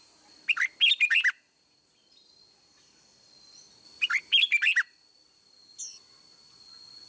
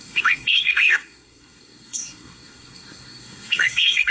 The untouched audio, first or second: first